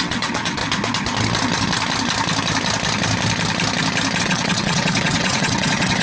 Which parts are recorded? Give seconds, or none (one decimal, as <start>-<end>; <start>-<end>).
0.6-4.2